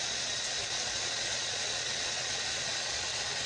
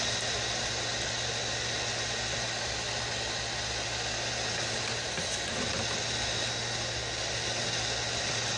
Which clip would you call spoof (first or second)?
first